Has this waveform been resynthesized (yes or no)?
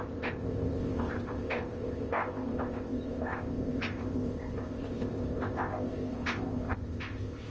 yes